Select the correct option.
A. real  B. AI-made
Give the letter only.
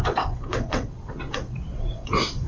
B